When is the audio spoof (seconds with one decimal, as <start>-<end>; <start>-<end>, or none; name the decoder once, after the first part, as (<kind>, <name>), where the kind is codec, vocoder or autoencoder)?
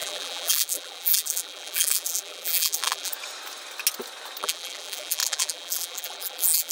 0.0-3.1 (vocoder, BigVGAN v2); 4.4-6.7